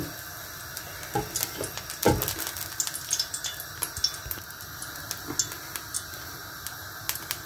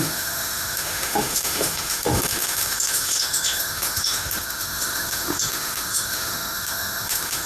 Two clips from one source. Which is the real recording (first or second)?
first